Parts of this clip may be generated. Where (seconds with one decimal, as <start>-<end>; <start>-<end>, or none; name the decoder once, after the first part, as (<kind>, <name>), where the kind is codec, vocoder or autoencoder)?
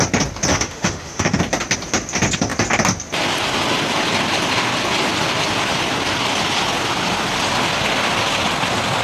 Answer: 0.5-1.4 (autoencoder, DAC-VAE)